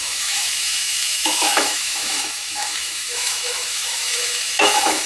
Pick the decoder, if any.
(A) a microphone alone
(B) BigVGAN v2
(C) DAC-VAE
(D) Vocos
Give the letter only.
C